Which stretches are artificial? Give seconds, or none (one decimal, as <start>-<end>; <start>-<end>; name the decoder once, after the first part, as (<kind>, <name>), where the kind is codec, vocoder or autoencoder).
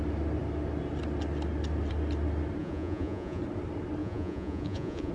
2.6-3.4 (vocoder, Vocos); 4.0-5.1